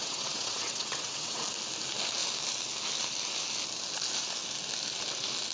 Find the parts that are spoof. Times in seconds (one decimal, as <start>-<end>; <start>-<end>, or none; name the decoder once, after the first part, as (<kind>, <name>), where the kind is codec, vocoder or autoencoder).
0.0-1.4 (vocoder, WaveNeXt)